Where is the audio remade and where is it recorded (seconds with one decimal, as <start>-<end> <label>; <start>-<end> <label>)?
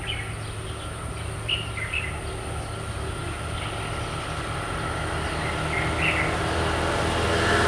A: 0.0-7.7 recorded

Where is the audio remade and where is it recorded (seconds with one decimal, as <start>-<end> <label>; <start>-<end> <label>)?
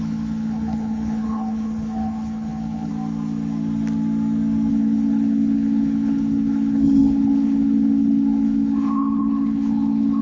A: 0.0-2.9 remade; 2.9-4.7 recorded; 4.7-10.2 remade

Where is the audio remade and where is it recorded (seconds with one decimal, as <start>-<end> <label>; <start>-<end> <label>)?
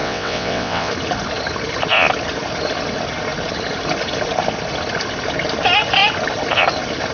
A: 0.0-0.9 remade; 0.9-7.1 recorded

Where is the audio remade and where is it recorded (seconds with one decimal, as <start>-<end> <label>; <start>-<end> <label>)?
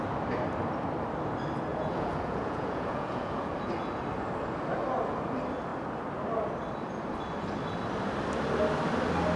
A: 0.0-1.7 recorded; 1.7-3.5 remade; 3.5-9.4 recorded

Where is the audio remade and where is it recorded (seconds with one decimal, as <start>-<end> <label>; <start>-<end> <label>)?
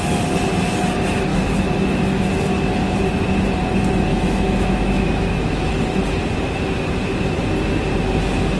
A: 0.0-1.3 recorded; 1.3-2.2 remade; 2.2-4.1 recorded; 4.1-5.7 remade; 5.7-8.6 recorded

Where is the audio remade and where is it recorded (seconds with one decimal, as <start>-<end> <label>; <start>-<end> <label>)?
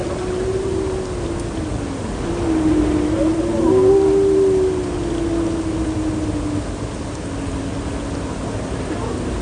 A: 0.0-9.4 recorded